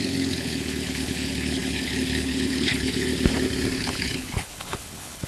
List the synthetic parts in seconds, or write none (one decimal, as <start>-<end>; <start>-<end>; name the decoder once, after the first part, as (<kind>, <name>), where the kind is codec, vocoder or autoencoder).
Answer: 0.0-3.1 (codec, HILCodec); 3.8-5.3